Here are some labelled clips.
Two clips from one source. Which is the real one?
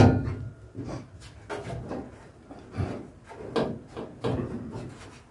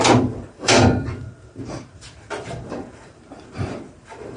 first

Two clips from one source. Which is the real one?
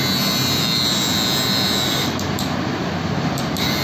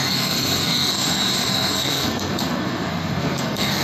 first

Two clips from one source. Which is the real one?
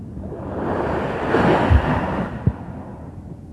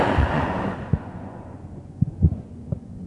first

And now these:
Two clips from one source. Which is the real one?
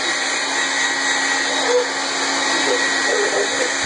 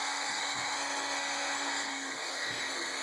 first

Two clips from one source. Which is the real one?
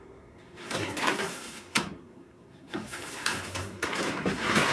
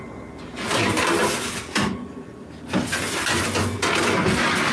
second